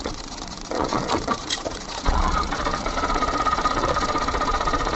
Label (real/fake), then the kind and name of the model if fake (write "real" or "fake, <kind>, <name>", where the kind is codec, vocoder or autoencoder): fake, vocoder, Vocos